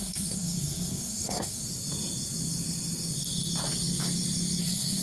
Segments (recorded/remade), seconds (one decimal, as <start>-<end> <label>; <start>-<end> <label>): 0.0-1.6 remade; 1.6-4.6 recorded; 4.6-5.0 remade